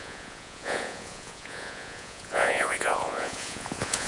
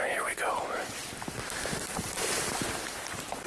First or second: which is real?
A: second